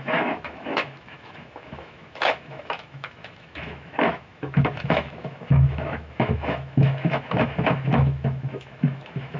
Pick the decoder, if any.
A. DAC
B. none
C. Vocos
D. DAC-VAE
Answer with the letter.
D